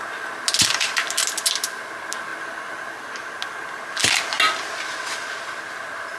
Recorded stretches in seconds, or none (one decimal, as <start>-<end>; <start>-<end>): 0.0-6.2